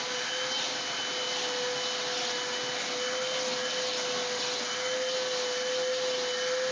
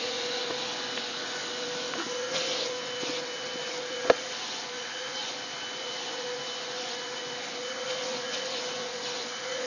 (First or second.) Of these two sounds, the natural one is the first